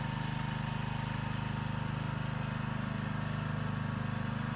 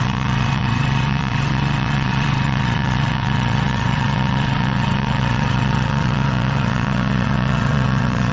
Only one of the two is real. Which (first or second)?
first